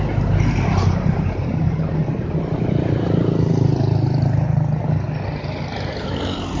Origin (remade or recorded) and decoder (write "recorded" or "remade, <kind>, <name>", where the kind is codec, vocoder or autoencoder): recorded